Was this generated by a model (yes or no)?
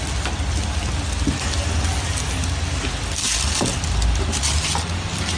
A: no